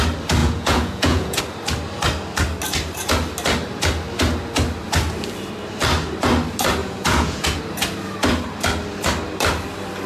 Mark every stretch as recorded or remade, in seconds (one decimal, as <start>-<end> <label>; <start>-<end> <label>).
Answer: 0.0-0.4 recorded; 0.4-1.4 remade; 1.4-6.8 recorded; 6.8-7.6 remade; 7.6-10.1 recorded